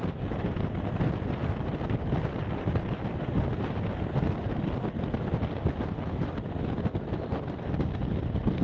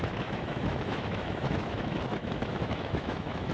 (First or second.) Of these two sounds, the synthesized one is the second